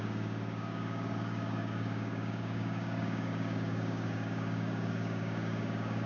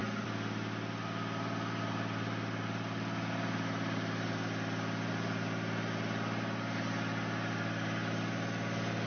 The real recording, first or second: second